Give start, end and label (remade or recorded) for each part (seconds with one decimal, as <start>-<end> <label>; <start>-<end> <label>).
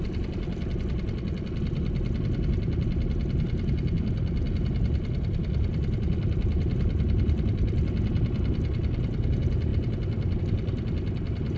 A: 0.0-11.6 recorded